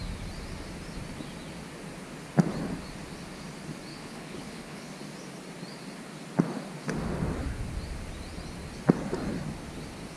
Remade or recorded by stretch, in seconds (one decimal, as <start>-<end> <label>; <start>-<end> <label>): 0.0-3.9 recorded; 3.9-4.9 remade; 4.9-10.2 recorded